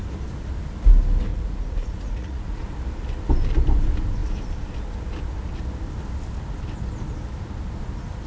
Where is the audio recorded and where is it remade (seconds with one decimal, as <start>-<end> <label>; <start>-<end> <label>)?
0.0-1.3 recorded; 1.3-2.6 remade; 2.6-8.3 recorded